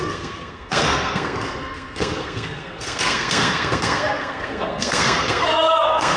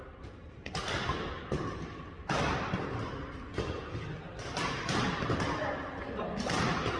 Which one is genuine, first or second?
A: second